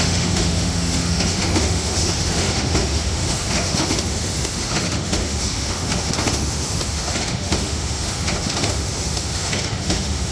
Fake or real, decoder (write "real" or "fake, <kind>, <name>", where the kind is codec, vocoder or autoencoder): fake, autoencoder, DAC-VAE